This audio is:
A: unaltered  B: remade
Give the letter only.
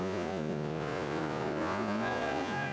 B